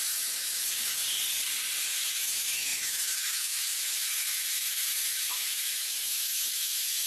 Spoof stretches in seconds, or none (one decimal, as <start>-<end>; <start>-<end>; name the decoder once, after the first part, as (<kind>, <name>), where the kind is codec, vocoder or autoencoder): 0.0-1.0 (autoencoder, DAC-VAE); 1.8-7.1

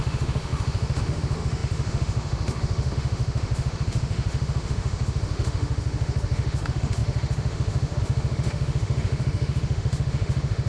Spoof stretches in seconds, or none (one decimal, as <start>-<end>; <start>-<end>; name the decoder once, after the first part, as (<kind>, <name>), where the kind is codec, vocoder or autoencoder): 0.0-10.7 (autoencoder, DAC-VAE)